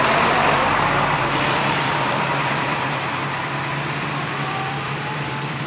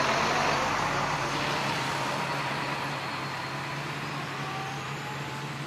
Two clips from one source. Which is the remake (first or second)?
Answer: first